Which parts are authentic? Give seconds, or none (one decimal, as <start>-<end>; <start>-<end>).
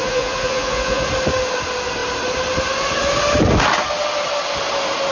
1.1-5.1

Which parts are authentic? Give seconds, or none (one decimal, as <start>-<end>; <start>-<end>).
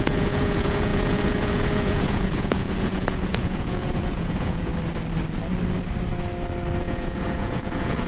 4.7-6.8